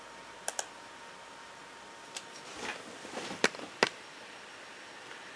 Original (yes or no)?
yes